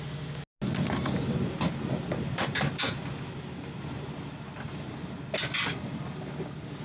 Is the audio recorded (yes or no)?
yes